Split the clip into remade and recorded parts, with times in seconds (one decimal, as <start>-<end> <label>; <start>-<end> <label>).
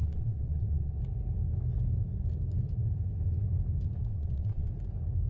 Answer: 0.0-1.0 remade; 1.0-4.1 recorded; 4.1-4.7 remade; 4.7-5.3 recorded